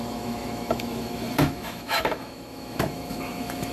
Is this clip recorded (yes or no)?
no